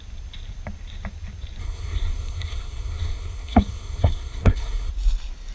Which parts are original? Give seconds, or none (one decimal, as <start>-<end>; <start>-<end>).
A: 0.0-1.6; 4.9-5.5